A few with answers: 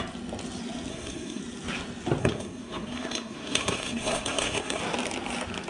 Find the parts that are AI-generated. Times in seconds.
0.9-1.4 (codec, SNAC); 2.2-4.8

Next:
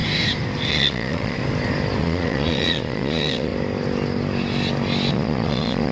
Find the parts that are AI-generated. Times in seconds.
0.7-1.4 (vocoder, Vocos); 2.0-3.5; 5.1-5.9

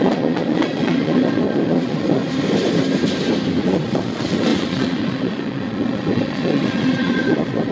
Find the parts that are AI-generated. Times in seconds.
0.0-2.2 (vocoder, Vocos); 3.6-7.7

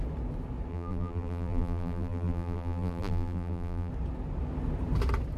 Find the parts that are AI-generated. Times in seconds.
0.7-3.9 (vocoder, BigVGAN v2)

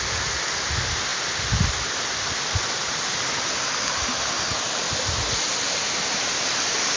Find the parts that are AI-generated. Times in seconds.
none